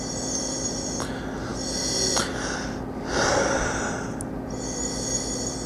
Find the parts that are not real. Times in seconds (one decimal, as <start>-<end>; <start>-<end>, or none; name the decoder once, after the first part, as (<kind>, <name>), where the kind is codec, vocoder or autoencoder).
none